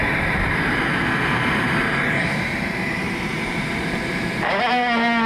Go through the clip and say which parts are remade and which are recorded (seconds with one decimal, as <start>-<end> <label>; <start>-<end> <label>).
0.0-0.8 remade; 0.8-1.9 recorded; 1.9-3.8 remade; 3.8-5.3 recorded